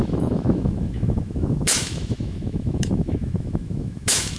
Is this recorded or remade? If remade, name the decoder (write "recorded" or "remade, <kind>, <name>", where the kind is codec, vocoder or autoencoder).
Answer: remade, autoencoder, DAC-VAE